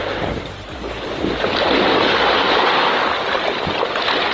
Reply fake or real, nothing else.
real